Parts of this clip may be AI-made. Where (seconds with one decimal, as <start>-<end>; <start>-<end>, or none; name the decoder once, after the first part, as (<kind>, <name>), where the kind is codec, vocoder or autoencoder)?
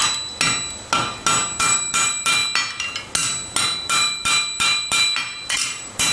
1.6-2.4 (vocoder, BigVGAN v2); 3.6-6.1